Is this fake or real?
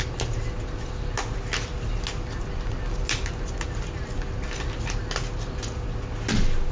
real